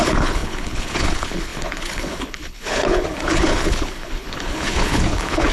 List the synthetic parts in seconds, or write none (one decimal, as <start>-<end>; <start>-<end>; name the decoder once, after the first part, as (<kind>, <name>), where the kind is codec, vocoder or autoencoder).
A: 0.0-5.5 (codec, HILCodec)